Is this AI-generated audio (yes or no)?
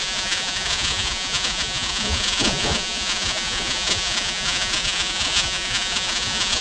yes